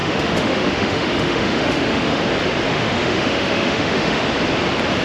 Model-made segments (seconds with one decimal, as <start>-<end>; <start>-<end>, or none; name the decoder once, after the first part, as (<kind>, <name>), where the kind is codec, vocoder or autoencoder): 0.0-2.2 (autoencoder, DAC-VAE); 2.7-4.2